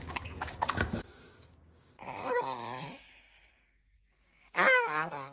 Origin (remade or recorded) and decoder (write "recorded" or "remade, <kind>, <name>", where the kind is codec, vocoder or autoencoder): remade, codec, DAC